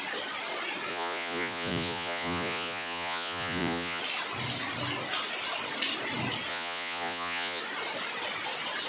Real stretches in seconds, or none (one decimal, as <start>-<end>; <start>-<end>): 0.0-0.9; 4.0-6.5; 7.6-8.9